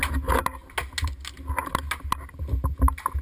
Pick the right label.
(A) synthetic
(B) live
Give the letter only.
B